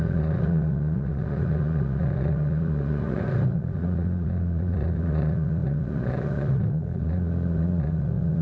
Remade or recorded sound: remade